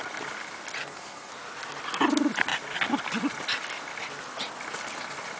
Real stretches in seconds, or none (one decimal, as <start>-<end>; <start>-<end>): 0.0-0.8; 1.3-5.4